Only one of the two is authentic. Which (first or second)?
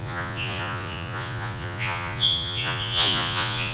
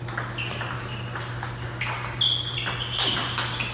second